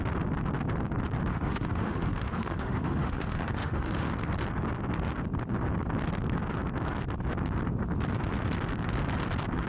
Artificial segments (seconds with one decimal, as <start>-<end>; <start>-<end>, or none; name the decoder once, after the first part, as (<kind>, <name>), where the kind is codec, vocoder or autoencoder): 1.3-4.1 (autoencoder, DAC-VAE)